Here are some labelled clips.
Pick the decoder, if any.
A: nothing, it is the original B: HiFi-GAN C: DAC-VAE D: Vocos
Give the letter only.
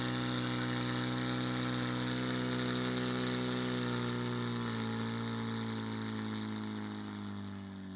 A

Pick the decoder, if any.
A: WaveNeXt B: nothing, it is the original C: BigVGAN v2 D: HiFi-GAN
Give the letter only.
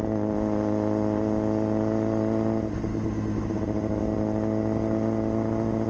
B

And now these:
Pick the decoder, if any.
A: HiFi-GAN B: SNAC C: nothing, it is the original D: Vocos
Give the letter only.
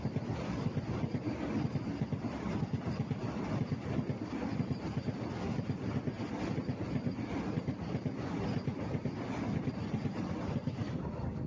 C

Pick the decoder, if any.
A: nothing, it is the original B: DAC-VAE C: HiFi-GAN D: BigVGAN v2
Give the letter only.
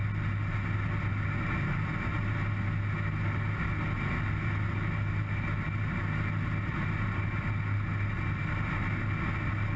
A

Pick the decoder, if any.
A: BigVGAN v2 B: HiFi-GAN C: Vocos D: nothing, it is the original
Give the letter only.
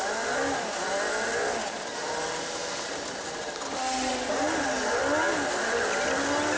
D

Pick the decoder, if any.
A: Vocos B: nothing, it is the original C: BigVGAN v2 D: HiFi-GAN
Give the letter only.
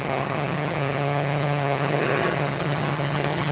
D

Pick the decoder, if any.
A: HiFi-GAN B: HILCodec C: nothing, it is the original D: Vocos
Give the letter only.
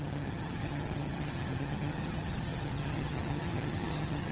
A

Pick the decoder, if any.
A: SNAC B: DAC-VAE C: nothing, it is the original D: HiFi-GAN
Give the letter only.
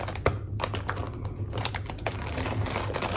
C